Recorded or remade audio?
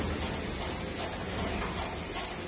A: recorded